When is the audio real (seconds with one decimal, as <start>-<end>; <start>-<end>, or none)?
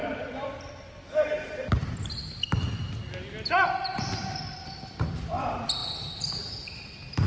0.0-5.8; 6.3-7.3